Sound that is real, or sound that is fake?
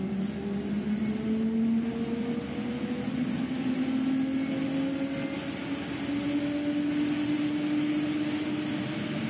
real